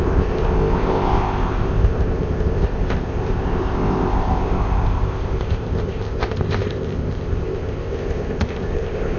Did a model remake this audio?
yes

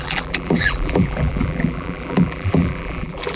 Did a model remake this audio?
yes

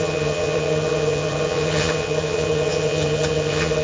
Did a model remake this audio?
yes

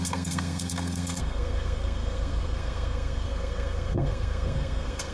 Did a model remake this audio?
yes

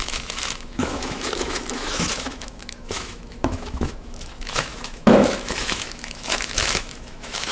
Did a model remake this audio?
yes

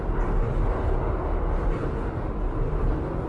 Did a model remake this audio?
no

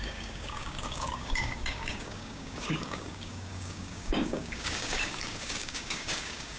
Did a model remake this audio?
yes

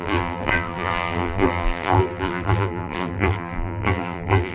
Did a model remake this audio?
yes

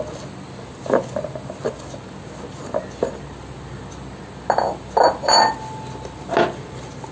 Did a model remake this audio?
no